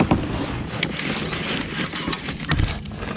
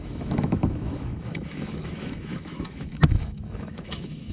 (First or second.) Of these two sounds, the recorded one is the first